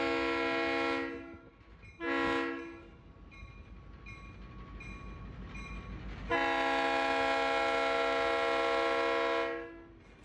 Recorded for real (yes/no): yes